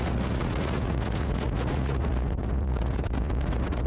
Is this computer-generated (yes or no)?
yes